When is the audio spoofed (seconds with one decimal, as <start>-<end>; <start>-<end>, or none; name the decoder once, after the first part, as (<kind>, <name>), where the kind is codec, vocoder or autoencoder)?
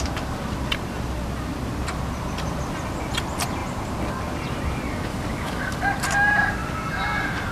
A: 5.1-5.9 (codec, DAC)